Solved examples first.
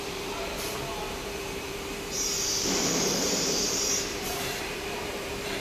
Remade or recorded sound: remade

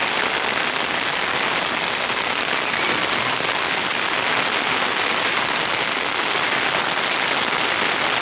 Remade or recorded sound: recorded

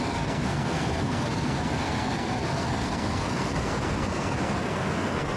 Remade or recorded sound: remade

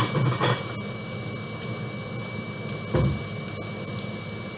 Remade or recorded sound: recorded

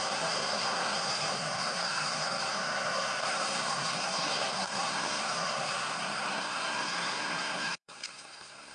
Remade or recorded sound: remade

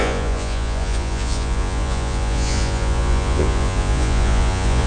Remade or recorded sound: remade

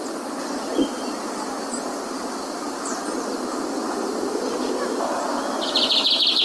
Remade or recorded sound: recorded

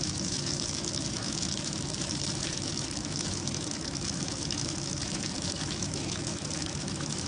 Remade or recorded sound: remade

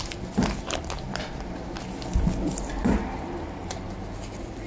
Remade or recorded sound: recorded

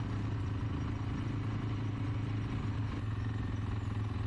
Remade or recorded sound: recorded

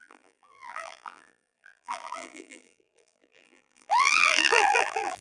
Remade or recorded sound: remade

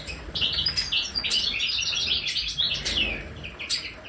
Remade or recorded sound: recorded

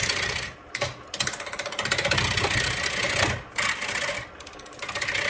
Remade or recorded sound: recorded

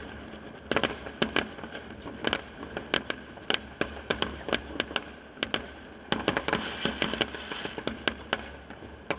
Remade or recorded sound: recorded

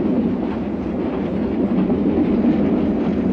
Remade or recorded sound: recorded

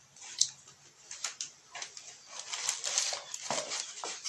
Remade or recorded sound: recorded